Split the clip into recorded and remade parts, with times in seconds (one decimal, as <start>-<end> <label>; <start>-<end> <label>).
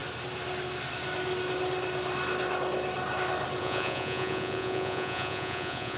0.0-3.6 recorded; 3.6-6.0 remade